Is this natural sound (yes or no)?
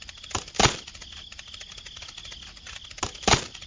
yes